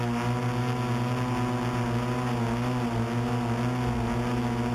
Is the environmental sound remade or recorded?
recorded